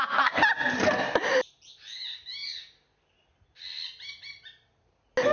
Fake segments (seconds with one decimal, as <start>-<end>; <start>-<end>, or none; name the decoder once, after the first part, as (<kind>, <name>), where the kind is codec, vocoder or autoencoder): none